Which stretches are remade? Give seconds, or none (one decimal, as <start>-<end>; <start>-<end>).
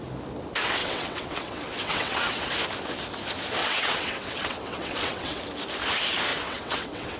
0.8-2.5; 3.6-5.4; 6.3-7.2